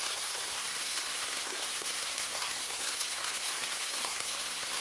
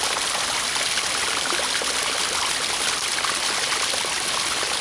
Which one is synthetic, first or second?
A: first